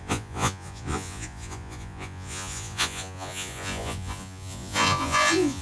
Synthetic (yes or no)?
yes